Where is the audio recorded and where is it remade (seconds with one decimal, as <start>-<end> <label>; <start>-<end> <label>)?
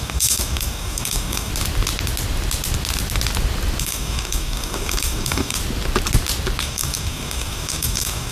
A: 0.0-1.5 remade; 1.5-3.8 recorded; 3.8-5.6 remade; 5.6-6.6 recorded; 6.6-8.3 remade